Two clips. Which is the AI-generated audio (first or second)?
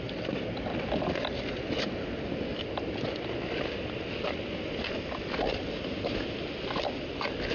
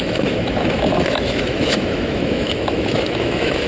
second